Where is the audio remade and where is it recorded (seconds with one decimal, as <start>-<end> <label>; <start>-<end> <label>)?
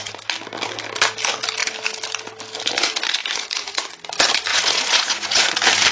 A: 0.0-3.2 recorded; 3.2-3.9 remade; 3.9-4.5 recorded; 4.5-5.5 remade; 5.5-5.9 recorded